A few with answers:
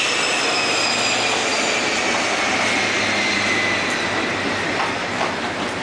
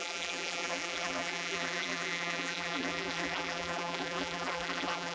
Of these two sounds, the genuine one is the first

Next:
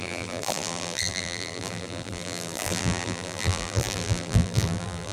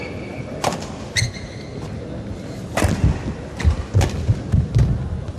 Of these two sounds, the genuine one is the second